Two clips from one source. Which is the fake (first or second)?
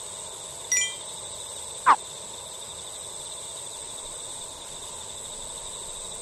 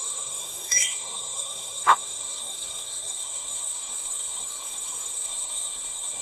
second